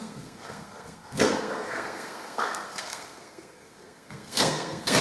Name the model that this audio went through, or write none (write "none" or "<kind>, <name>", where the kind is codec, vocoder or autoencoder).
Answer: codec, SNAC